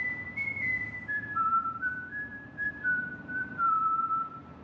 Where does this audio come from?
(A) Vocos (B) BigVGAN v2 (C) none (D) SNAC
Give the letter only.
B